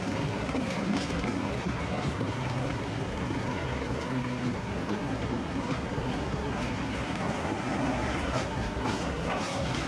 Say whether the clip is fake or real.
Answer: fake